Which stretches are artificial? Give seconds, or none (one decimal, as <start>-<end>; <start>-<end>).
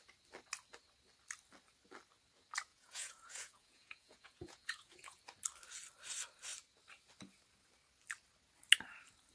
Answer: 2.7-5.2